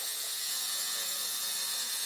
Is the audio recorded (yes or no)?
no